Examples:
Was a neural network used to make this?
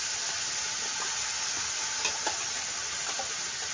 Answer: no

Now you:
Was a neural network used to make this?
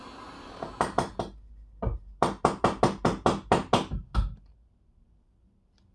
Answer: no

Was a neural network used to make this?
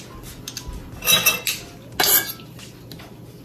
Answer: no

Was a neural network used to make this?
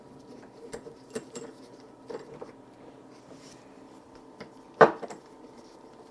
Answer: yes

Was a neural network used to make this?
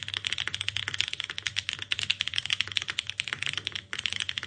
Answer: no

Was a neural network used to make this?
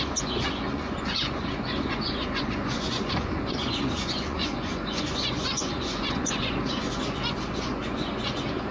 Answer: yes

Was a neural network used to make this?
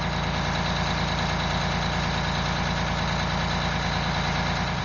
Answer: no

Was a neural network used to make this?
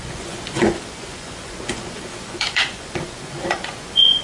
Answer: yes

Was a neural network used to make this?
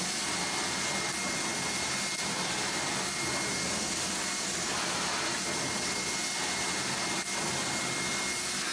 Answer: no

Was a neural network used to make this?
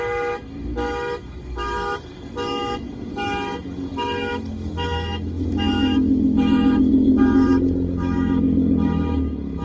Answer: yes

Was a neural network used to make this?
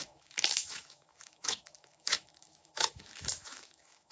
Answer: yes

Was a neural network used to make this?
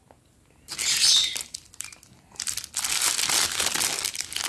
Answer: no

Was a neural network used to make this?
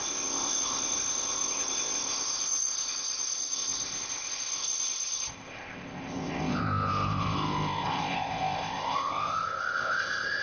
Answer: yes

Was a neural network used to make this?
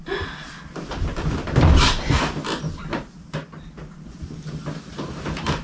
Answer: no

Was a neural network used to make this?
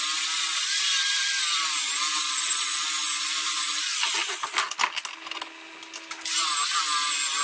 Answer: no